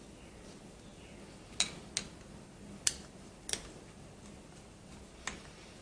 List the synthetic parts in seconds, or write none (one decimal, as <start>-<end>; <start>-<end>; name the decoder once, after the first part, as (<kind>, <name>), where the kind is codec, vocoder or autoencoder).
none